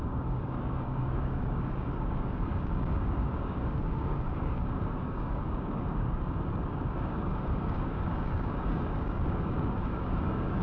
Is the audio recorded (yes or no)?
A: no